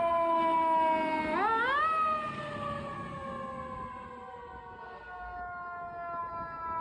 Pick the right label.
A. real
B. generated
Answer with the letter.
A